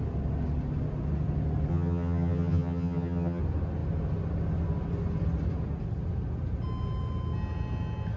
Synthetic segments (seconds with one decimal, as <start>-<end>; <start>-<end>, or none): 1.7-3.4